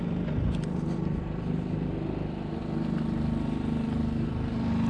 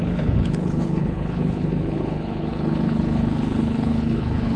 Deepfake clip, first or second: second